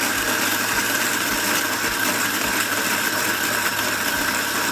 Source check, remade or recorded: remade